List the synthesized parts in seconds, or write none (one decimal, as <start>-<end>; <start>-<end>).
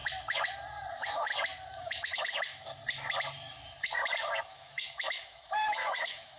0.9-1.3; 1.8-2.7; 4.4-6.4